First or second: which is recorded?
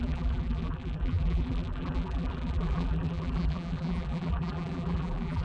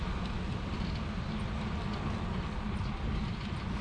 second